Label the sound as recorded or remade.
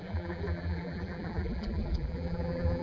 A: remade